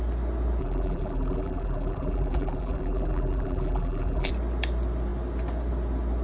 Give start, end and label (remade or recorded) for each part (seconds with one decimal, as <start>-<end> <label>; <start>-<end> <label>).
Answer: 0.0-0.6 recorded; 0.6-4.3 remade; 4.3-6.2 recorded